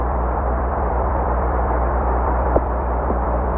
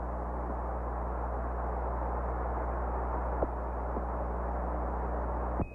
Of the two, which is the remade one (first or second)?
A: first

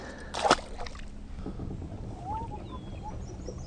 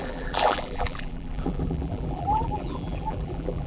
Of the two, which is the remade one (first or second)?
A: second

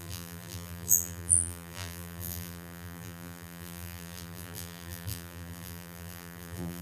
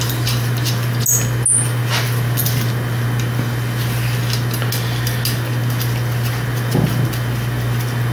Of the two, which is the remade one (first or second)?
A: first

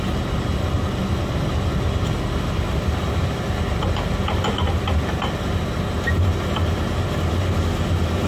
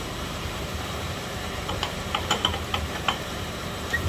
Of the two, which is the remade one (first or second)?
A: second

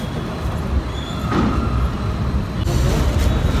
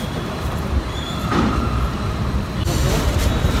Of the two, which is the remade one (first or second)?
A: second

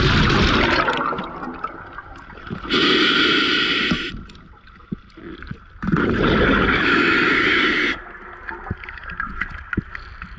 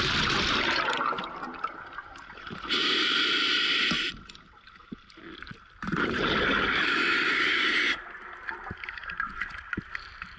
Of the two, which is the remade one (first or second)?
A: second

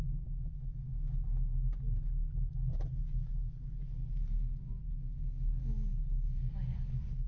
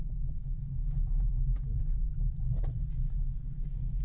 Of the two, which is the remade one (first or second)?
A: second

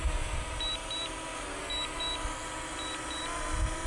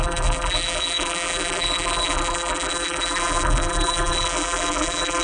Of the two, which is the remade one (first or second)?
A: second